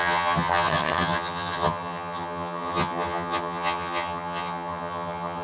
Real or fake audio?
fake